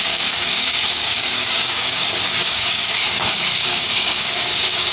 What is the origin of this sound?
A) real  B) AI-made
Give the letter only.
B